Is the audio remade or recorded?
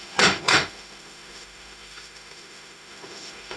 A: remade